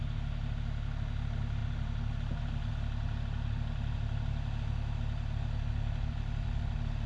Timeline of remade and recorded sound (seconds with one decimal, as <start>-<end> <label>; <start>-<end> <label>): 0.0-7.1 recorded

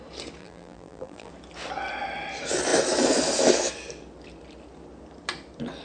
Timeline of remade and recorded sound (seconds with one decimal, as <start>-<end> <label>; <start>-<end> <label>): 0.0-0.4 recorded; 0.4-1.3 remade; 1.3-5.8 recorded

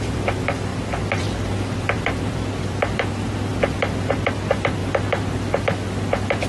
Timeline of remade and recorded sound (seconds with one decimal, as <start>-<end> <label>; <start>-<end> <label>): 0.0-4.8 remade; 4.8-6.5 recorded